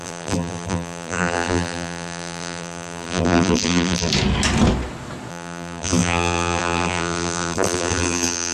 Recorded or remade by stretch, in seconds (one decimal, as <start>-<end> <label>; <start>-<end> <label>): 0.0-4.1 remade; 4.1-5.3 recorded; 5.3-8.5 remade